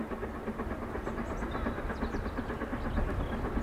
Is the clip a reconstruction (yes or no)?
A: no